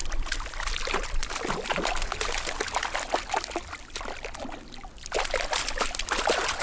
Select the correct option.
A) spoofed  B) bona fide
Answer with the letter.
B